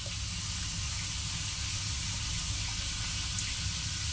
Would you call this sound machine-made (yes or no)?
no